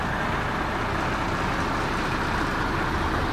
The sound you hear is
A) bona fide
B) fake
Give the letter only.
A